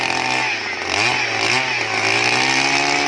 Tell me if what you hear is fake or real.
real